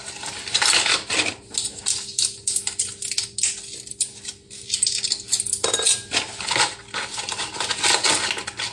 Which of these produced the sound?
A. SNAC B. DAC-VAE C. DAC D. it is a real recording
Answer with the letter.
D